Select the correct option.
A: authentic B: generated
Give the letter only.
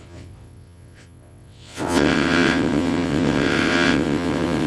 B